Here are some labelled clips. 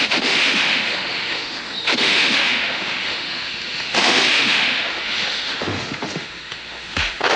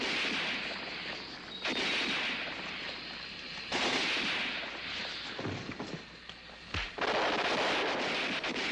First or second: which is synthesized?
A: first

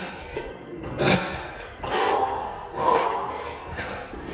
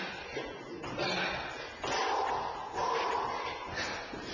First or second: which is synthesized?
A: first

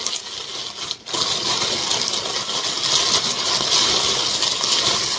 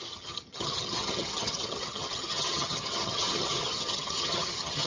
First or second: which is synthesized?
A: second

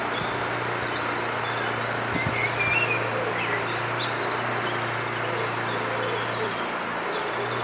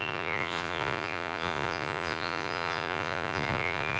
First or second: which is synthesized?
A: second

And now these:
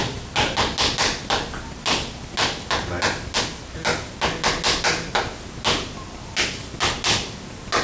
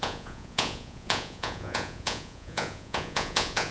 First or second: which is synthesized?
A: second